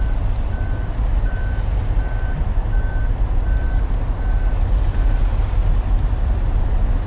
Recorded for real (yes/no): yes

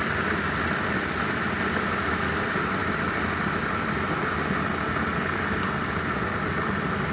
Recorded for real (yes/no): yes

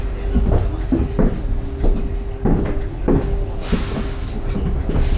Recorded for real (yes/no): yes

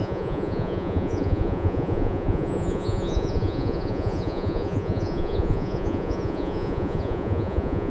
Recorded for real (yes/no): no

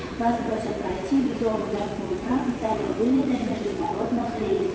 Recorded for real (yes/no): no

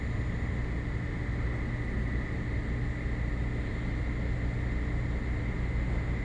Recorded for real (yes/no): yes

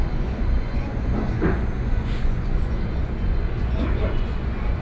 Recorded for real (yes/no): no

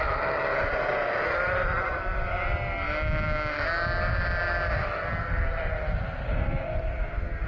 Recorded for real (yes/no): yes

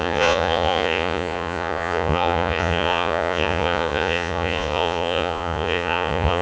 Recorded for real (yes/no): no